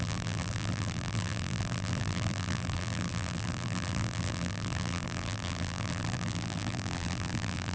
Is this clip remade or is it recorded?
remade